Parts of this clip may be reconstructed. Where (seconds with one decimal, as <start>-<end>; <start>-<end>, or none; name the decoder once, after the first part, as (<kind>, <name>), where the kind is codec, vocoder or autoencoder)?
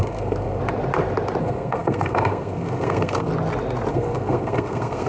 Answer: 0.0-0.6 (codec, SNAC); 1.4-3.3; 3.9-5.1